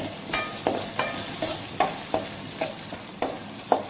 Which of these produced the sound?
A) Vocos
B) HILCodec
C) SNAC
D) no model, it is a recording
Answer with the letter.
D